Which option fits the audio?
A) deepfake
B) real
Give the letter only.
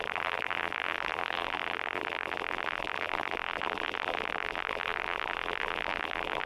A